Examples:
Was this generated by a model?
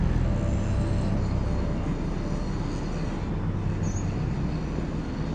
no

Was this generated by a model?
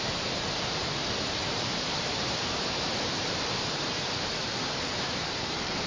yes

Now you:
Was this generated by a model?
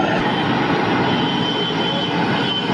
no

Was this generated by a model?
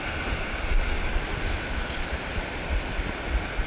no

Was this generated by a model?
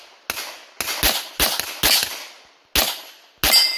no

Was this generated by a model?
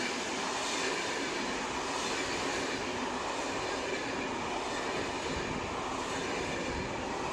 no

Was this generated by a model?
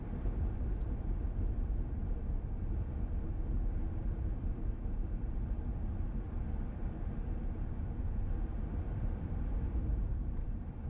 yes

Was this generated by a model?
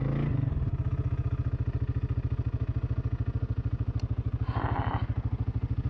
no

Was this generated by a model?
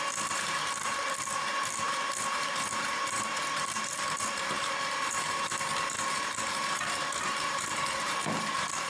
yes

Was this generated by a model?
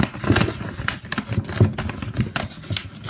no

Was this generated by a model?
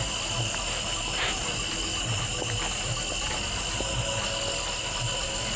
no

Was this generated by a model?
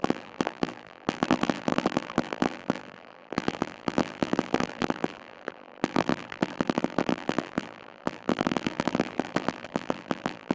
yes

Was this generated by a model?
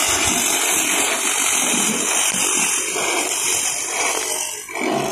no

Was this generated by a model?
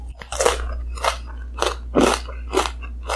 no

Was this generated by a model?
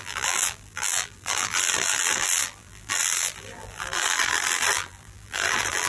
yes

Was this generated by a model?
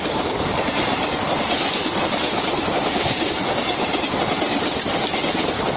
yes